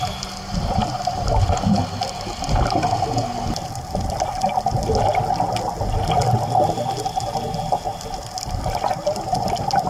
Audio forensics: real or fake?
real